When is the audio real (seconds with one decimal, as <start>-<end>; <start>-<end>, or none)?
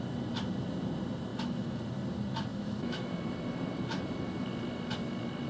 0.0-1.3; 1.8-2.5; 3.1-5.5